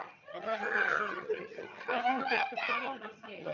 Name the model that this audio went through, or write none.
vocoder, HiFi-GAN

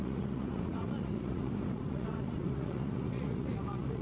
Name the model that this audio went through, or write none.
vocoder, Vocos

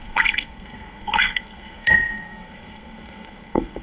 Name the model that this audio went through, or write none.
codec, SNAC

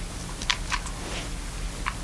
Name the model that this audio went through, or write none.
none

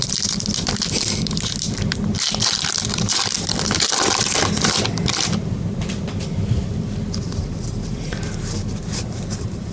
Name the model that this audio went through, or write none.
vocoder, BigVGAN v2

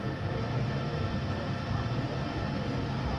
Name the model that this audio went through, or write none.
none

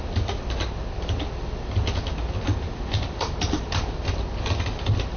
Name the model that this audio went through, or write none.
none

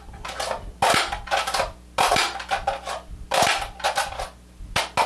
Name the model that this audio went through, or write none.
none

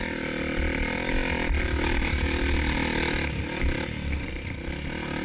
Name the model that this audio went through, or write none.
none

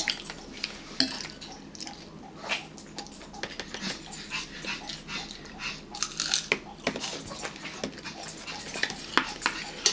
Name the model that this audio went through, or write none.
none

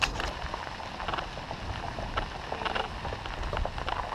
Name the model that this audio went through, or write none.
none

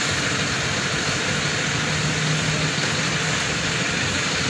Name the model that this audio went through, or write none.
none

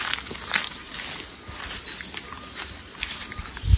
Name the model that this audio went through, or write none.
none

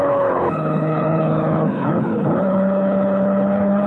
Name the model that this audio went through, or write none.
codec, HILCodec